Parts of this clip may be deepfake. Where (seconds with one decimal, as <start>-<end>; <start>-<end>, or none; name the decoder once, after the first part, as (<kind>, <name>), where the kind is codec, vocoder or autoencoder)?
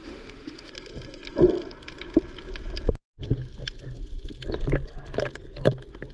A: 0.0-0.7 (autoencoder, DAC-VAE)